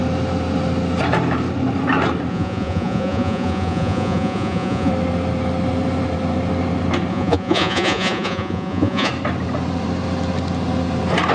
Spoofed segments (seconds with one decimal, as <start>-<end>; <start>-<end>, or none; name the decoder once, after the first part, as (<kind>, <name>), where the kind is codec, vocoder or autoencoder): 2.3-4.9 (vocoder, Vocos); 7.1-9.1